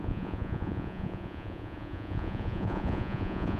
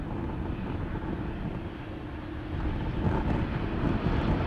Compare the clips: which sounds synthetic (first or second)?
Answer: first